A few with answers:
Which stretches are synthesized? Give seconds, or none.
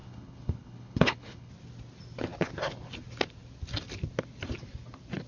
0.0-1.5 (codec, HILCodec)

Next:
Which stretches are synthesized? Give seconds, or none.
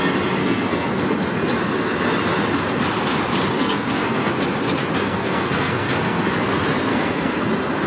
0.4-1.0 (codec, SNAC); 3.6-4.3; 5.0-6.3; 6.9-7.5